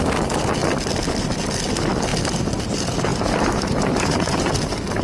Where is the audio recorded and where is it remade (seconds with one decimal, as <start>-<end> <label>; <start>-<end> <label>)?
0.0-3.1 recorded; 3.1-4.5 remade; 4.5-5.0 recorded